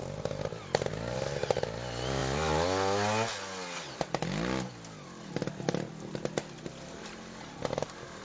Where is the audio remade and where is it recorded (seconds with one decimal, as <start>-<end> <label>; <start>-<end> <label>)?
0.0-8.2 recorded